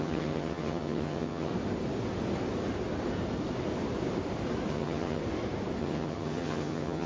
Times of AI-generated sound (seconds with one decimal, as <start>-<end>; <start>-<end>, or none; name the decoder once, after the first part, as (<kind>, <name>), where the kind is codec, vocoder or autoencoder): 0.0-1.5 (vocoder, HiFi-GAN); 4.7-5.2; 5.8-7.1